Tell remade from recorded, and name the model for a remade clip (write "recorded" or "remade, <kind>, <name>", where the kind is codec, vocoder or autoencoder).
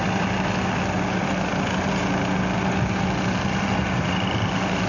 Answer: recorded